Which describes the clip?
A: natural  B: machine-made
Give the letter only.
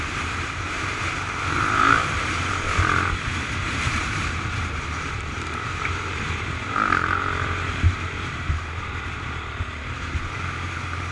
B